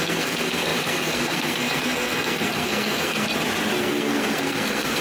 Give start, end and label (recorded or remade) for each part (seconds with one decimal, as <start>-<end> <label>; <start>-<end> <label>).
0.0-3.3 remade; 3.3-3.8 recorded; 3.8-5.0 remade